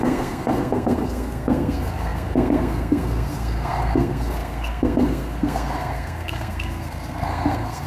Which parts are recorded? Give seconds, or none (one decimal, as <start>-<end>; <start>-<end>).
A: none

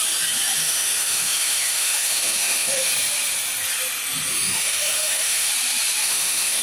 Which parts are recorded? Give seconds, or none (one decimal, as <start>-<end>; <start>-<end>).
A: 0.0-0.6; 2.9-4.3; 5.5-6.0

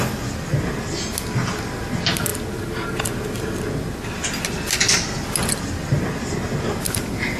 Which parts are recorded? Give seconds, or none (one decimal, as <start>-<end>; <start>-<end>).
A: 0.0-7.4

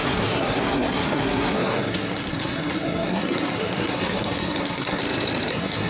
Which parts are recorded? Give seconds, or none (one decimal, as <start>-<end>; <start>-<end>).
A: 5.0-5.5